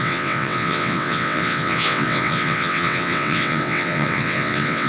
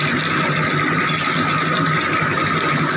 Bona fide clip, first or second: second